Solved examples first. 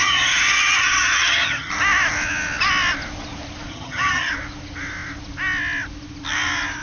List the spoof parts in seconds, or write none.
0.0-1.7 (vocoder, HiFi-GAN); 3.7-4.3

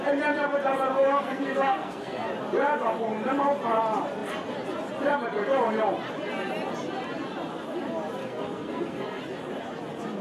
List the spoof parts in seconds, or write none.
1.1-2.3 (codec, SNAC); 8.2-9.2

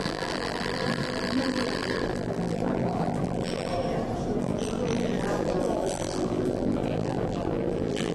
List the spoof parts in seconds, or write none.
0.0-3.7 (vocoder, BigVGAN v2); 4.4-8.1

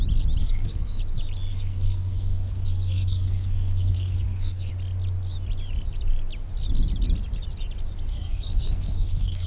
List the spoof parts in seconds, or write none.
0.4-1.0 (codec, SNAC); 1.5-4.7; 8.1-9.5

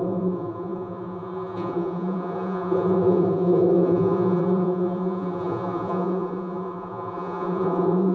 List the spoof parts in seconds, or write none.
0.0-8.1 (vocoder, Vocos)

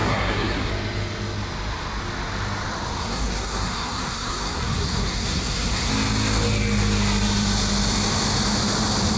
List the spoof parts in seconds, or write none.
0.0-0.7 (codec, SNAC); 3.0-5.9

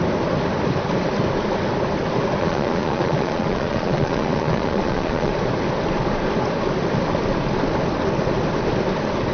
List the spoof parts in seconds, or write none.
2.4-5.3 (vocoder, Vocos)